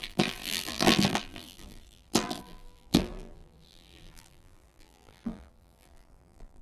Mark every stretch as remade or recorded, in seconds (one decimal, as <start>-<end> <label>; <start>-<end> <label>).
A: 0.0-6.6 remade